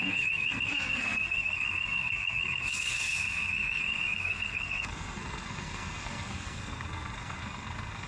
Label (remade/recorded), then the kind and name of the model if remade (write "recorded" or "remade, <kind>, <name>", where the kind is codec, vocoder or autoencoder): remade, codec, SNAC